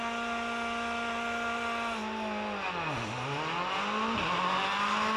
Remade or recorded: recorded